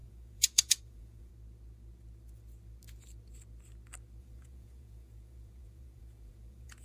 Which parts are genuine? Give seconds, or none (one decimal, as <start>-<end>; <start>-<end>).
1.3-4.2